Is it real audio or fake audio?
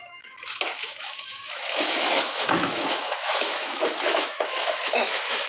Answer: fake